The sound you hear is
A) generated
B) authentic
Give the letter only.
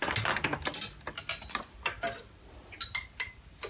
B